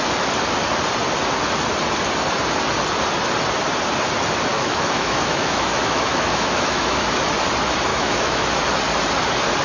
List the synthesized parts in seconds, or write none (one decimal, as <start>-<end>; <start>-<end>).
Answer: 4.5-7.2; 7.9-8.5